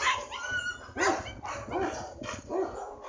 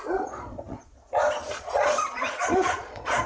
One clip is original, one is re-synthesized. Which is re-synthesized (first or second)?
second